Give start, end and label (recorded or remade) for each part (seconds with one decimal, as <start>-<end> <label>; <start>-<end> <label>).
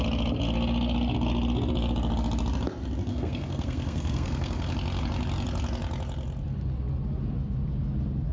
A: 0.0-3.1 recorded; 3.1-4.7 remade; 4.7-8.3 recorded